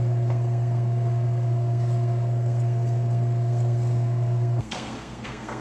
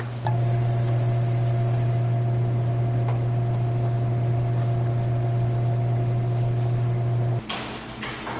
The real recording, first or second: second